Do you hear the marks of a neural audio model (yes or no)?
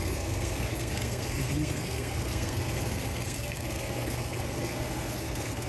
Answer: yes